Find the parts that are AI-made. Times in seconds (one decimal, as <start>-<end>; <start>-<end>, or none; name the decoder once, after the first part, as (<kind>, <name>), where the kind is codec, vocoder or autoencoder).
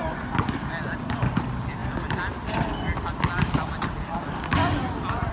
none